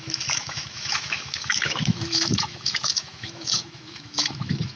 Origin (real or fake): fake